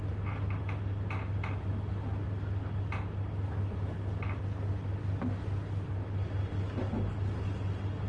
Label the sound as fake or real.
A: real